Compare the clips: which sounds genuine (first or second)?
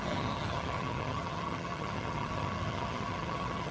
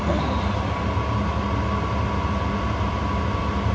second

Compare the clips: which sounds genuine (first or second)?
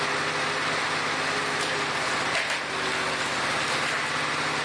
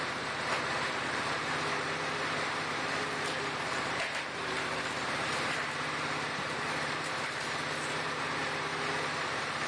first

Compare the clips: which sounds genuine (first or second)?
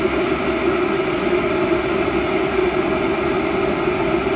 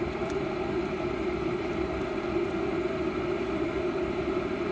first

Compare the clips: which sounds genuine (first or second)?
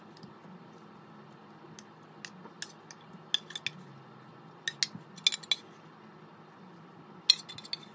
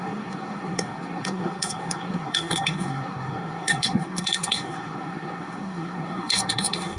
first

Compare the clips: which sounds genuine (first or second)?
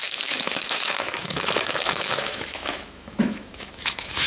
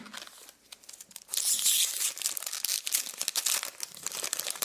second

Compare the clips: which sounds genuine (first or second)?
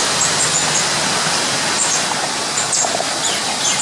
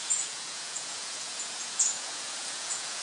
first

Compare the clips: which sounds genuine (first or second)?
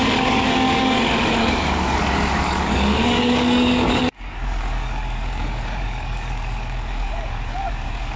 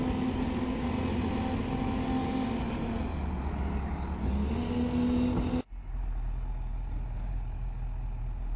second